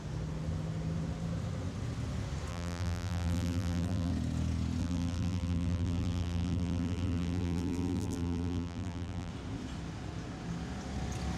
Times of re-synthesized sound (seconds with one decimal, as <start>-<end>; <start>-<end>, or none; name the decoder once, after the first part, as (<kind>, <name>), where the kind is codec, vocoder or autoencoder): 2.5-4.1 (vocoder, BigVGAN v2); 4.8-9.3